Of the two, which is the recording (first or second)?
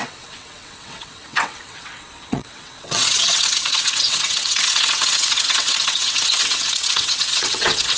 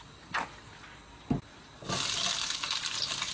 second